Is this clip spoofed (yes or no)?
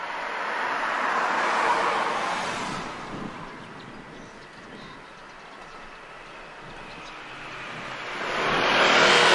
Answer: no